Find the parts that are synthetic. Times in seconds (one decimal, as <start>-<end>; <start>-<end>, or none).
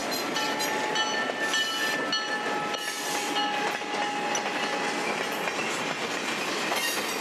none